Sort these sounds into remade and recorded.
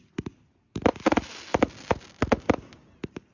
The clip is recorded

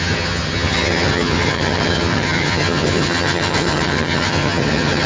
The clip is remade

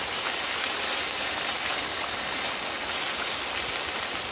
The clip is recorded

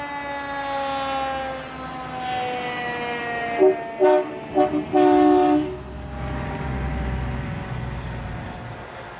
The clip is recorded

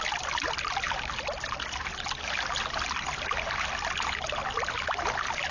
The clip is recorded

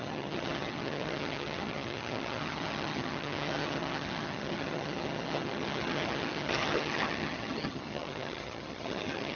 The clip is remade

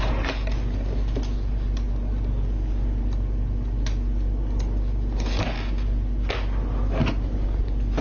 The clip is recorded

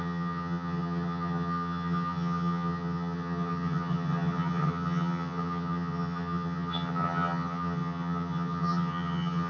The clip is remade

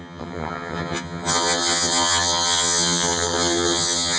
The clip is remade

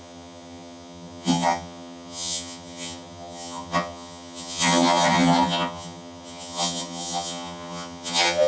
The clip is remade